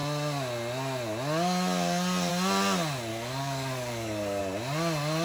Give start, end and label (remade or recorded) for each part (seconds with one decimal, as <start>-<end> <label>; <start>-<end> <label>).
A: 0.0-3.1 recorded; 3.1-4.4 remade; 4.4-5.2 recorded

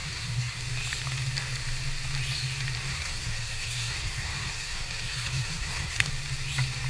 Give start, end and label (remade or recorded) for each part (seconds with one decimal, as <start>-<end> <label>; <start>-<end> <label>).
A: 0.0-0.6 remade; 0.6-2.9 recorded; 2.9-6.1 remade; 6.1-6.9 recorded

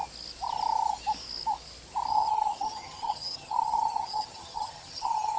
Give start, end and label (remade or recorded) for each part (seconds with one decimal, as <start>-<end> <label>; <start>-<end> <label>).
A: 0.0-2.1 recorded; 2.1-5.4 remade

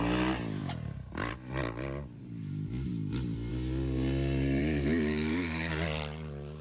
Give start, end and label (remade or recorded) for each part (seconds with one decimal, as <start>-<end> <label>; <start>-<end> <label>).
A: 0.0-4.6 recorded; 4.6-5.7 remade; 5.7-6.6 recorded

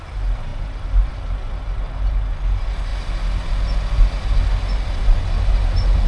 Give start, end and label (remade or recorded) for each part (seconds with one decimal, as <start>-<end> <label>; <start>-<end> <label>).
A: 0.0-6.1 recorded

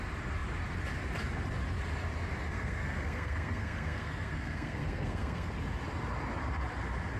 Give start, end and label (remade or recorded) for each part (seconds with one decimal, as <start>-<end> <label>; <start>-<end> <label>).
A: 0.0-2.5 recorded; 2.5-5.5 remade; 5.5-7.2 recorded

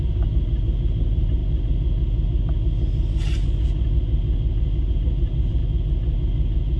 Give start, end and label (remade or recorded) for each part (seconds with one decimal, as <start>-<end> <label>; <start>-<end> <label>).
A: 0.0-1.4 remade; 1.4-4.9 recorded; 4.9-5.6 remade; 5.6-6.8 recorded

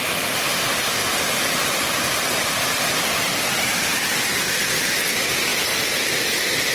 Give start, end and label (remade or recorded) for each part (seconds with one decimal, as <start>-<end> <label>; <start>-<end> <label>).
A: 0.0-6.7 recorded